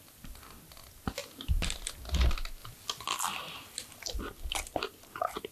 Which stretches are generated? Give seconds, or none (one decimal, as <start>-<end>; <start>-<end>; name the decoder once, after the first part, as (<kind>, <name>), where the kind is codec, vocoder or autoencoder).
1.2-2.2 (vocoder, BigVGAN v2)